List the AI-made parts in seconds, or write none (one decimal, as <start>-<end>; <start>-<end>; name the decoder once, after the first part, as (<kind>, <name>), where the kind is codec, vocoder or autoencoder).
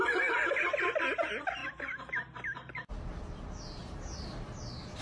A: 1.6-2.9 (vocoder, BigVGAN v2); 3.8-5.0